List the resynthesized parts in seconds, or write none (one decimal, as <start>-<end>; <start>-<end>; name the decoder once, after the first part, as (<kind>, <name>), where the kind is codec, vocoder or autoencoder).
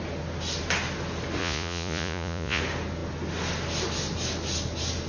1.4-2.6 (vocoder, Vocos)